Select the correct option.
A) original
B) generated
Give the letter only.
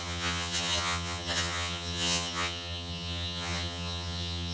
B